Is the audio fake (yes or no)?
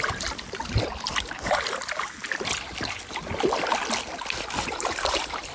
no